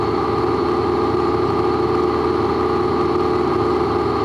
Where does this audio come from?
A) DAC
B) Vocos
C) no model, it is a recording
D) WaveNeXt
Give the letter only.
C